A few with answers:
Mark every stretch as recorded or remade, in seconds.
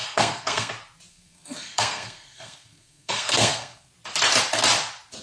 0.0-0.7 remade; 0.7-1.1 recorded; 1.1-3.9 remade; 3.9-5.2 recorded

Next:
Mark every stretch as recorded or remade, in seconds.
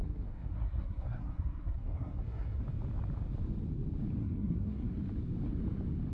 0.0-2.6 remade; 2.6-4.2 recorded; 4.2-4.9 remade; 4.9-6.1 recorded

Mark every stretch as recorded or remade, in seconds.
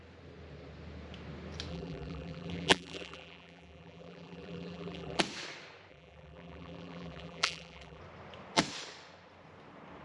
0.0-1.7 recorded; 1.7-5.2 remade; 5.2-5.9 recorded; 5.9-8.0 remade; 8.0-10.0 recorded